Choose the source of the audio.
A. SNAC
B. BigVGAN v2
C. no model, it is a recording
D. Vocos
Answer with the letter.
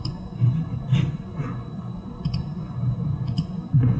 D